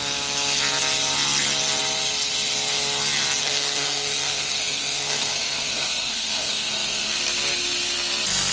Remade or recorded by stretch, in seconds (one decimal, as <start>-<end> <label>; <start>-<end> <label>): 0.0-3.4 recorded; 3.4-7.2 remade; 7.2-8.5 recorded